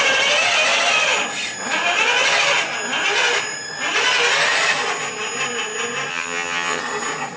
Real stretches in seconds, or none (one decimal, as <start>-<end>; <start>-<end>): 0.0-6.1; 6.8-7.4